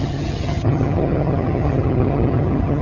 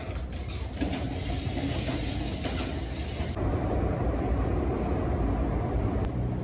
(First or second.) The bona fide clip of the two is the second